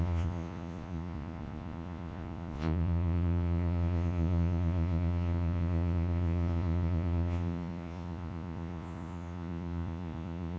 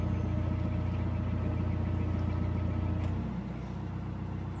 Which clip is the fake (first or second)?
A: first